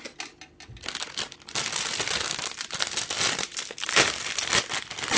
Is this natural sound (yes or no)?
yes